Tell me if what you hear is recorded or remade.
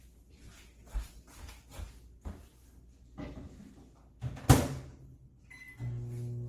recorded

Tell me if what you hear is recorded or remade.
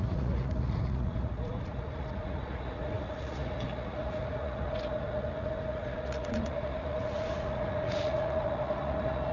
remade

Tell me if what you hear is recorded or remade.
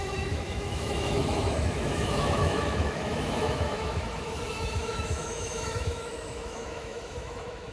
remade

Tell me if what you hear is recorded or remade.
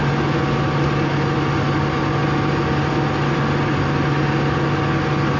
recorded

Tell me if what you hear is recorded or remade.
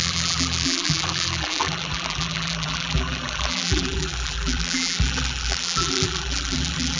remade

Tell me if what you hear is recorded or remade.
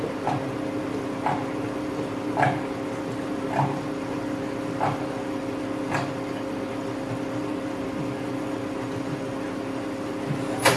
recorded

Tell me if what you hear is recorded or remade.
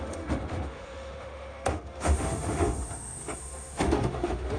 remade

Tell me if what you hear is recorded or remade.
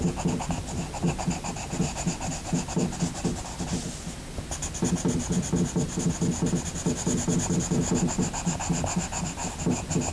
recorded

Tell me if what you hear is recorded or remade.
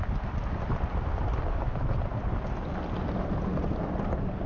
recorded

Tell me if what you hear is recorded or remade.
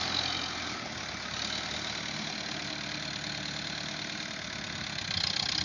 recorded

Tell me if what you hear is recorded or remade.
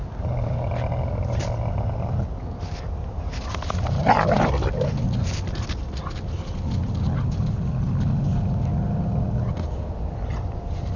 recorded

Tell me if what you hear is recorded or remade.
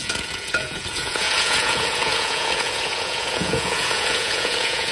remade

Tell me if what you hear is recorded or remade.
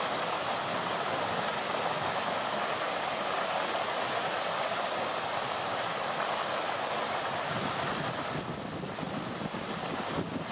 recorded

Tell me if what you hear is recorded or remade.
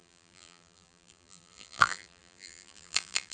remade